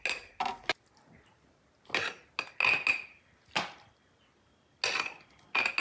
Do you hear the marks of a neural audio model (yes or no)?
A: no